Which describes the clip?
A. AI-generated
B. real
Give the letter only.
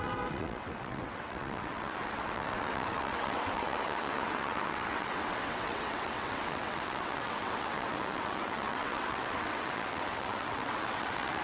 A